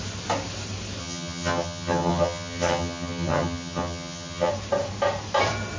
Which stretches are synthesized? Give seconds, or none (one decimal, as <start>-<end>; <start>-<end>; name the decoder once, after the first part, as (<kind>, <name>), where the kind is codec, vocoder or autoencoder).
1.0-4.5 (vocoder, HiFi-GAN)